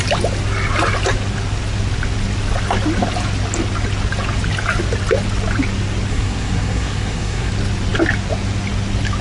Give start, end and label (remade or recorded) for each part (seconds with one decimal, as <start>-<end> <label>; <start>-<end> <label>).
0.0-6.1 recorded; 6.1-7.5 remade; 7.5-9.2 recorded